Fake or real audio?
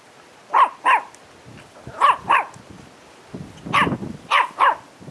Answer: real